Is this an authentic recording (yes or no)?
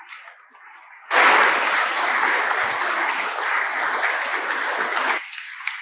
yes